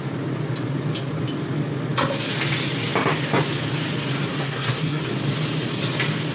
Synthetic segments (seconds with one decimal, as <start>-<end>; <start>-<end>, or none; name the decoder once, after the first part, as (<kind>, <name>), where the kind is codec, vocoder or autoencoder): 4.3-5.0 (codec, SNAC)